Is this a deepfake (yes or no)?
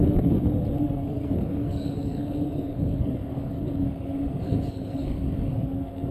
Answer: yes